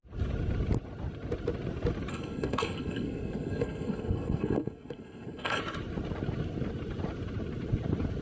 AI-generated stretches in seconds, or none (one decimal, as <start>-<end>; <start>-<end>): 2.1-5.6